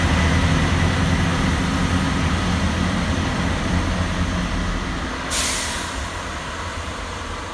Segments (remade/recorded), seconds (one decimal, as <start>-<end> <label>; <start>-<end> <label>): 0.0-1.3 recorded; 1.3-4.7 remade; 4.7-6.7 recorded; 6.7-7.5 remade